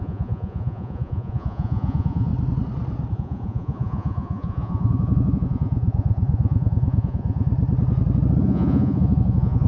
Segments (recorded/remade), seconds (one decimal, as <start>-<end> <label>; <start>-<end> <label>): 0.0-2.3 remade; 2.3-3.1 recorded; 3.1-7.5 remade; 7.5-8.4 recorded; 8.4-9.7 remade